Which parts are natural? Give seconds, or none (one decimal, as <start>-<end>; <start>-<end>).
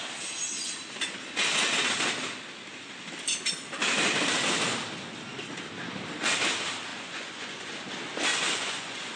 0.0-6.9; 7.7-8.3